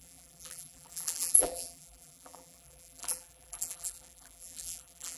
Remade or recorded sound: remade